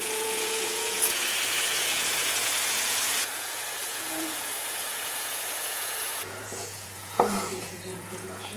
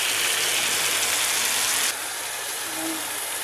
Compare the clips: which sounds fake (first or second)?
first